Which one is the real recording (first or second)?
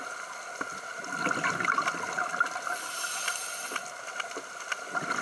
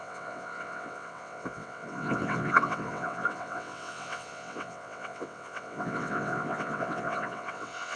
first